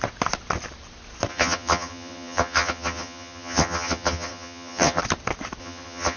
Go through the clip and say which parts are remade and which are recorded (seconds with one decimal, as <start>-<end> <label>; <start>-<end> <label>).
0.0-1.3 recorded; 1.3-5.0 remade; 5.0-5.6 recorded; 5.6-6.2 remade